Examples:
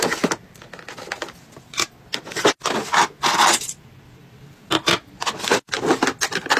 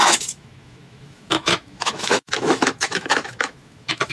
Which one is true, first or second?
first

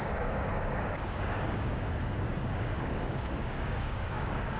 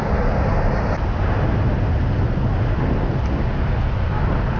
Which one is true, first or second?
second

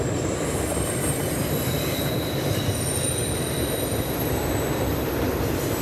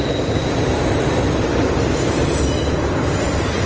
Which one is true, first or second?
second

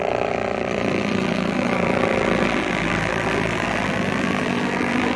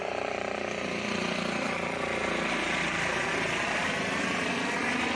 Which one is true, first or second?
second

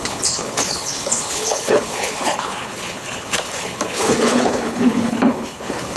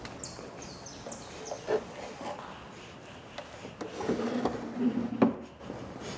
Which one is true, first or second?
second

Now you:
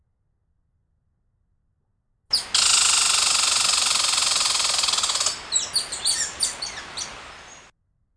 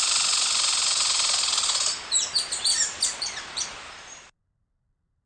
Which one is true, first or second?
first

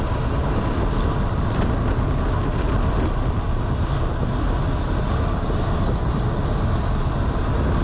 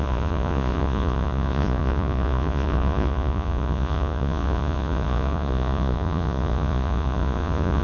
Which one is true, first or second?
first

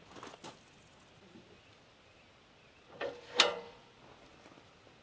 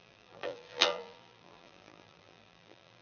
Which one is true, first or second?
first